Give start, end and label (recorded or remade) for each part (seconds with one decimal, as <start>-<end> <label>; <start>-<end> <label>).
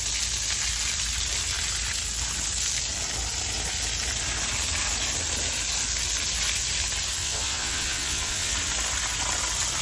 0.0-7.2 recorded; 7.2-8.5 remade; 8.5-9.8 recorded